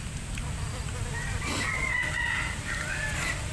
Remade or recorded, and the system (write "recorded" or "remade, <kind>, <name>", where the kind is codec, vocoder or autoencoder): remade, vocoder, BigVGAN v2